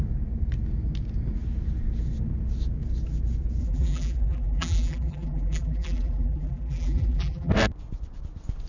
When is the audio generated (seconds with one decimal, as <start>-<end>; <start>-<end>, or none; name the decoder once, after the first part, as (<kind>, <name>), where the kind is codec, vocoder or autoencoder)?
3.6-7.5 (vocoder, BigVGAN v2)